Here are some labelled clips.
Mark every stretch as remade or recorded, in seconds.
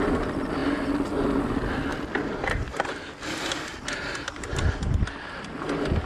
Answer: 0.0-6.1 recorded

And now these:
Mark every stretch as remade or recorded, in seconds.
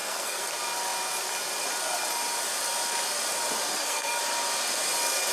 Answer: 0.0-0.5 remade; 0.5-3.7 recorded; 3.7-4.2 remade; 4.2-5.3 recorded